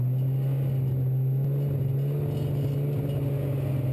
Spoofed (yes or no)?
no